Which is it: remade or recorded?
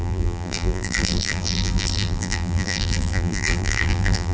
remade